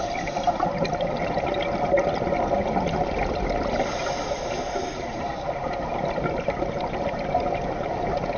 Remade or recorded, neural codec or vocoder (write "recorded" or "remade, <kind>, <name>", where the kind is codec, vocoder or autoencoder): recorded